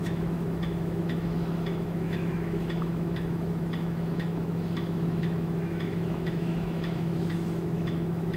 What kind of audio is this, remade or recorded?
remade